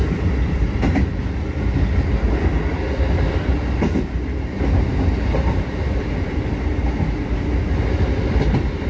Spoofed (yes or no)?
no